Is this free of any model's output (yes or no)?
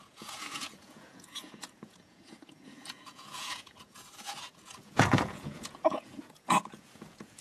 no